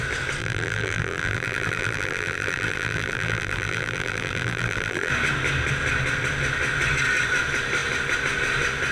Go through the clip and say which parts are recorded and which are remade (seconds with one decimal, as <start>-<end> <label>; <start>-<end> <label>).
0.0-0.4 recorded; 0.4-5.1 remade; 5.1-8.9 recorded